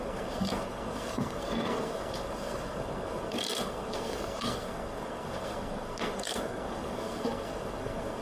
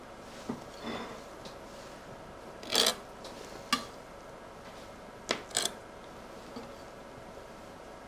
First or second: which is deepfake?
first